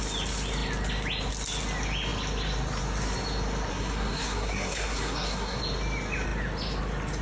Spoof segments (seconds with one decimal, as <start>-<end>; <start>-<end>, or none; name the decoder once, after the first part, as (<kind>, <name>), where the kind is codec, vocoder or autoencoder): 3.7-5.6 (codec, SNAC)